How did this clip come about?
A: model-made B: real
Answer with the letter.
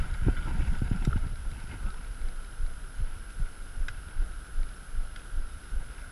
B